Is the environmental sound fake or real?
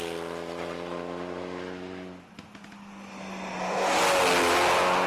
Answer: real